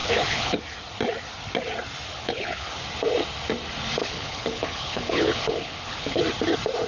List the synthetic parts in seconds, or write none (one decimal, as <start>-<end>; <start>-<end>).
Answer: 0.0-0.6; 2.1-2.8; 4.0-6.2